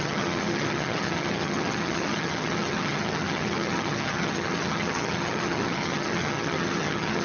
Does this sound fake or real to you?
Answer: fake